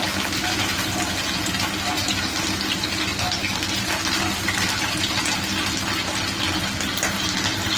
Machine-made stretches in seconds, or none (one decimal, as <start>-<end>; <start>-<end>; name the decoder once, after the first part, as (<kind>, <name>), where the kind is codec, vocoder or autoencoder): none